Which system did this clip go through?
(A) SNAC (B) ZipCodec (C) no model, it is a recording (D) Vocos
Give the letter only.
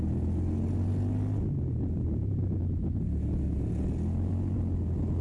C